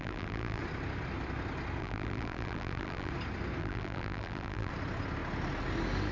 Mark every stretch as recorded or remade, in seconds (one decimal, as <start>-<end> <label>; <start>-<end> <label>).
0.0-0.6 remade; 0.6-1.8 recorded; 1.8-3.1 remade; 3.1-3.6 recorded; 3.6-4.7 remade; 4.7-6.1 recorded